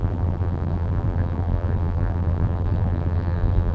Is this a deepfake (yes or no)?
yes